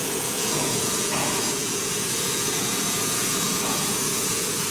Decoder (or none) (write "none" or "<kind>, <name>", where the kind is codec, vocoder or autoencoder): vocoder, Vocos